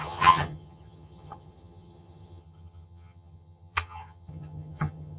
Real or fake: fake